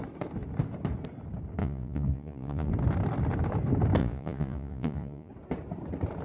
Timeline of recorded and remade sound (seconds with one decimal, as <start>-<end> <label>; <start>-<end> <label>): 0.0-1.6 recorded; 1.6-2.7 remade; 2.7-4.0 recorded; 4.0-5.3 remade; 5.3-6.2 recorded